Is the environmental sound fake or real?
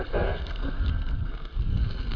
fake